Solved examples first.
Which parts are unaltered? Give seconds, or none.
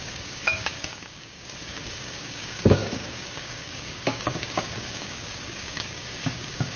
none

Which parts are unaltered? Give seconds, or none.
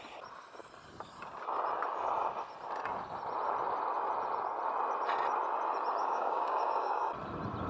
0.0-6.0; 7.1-7.7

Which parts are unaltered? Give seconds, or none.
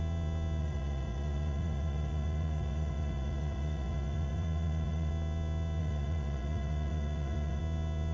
0.0-0.6; 5.1-5.8; 7.6-8.1